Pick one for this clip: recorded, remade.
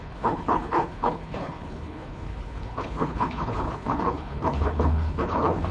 remade